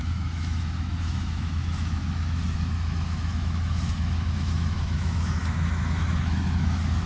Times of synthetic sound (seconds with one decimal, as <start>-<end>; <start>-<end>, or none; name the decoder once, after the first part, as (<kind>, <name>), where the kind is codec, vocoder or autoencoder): 0.0-7.1 (autoencoder, DAC-VAE)